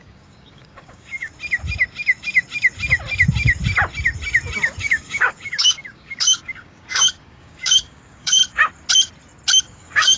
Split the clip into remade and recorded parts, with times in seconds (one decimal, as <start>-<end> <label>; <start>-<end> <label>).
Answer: 0.0-1.3 remade; 1.3-4.8 recorded; 4.8-8.4 remade; 8.4-9.6 recorded; 9.6-10.2 remade